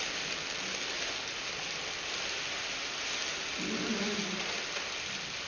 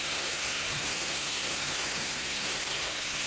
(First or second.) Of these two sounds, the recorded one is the first